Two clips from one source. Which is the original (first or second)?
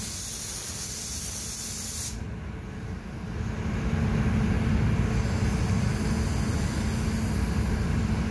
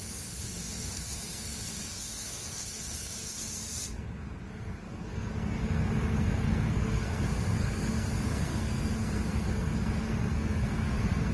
first